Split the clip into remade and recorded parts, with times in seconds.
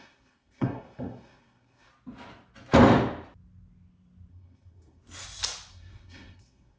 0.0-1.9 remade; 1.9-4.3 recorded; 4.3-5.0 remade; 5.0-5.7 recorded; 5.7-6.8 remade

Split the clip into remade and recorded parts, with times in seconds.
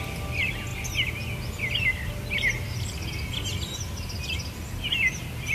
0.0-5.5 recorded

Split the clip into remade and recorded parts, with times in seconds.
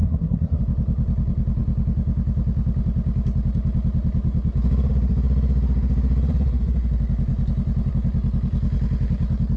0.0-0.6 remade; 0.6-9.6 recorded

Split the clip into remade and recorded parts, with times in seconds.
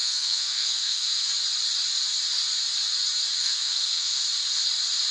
0.0-1.3 remade; 1.3-3.4 recorded; 3.4-4.2 remade; 4.2-5.1 recorded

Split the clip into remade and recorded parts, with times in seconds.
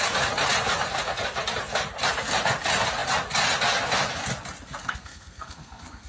0.0-4.8 recorded; 4.8-6.1 remade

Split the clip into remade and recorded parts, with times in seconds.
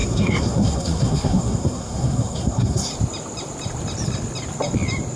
0.0-2.9 remade; 2.9-5.2 recorded